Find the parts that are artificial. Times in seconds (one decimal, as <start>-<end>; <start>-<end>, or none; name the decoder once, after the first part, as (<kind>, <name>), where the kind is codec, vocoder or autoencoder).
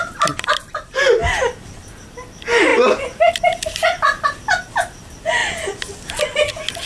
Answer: 0.0-1.2 (vocoder, BigVGAN v2); 1.9-2.7; 3.3-5.4